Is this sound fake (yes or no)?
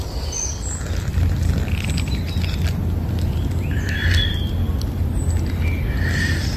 no